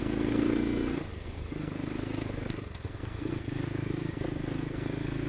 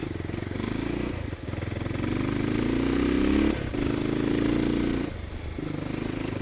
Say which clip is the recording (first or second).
second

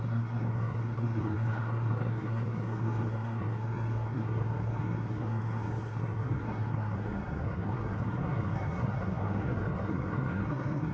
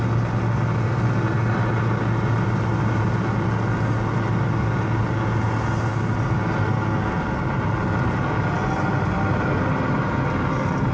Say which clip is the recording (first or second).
second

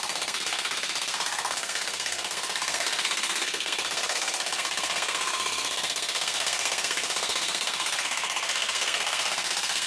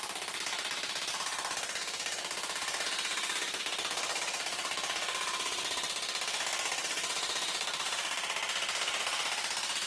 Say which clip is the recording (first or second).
second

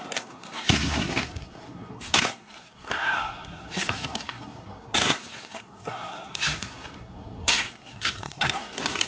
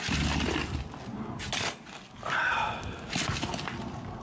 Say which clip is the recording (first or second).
second